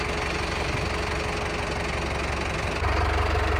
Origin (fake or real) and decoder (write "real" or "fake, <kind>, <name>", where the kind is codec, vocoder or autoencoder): real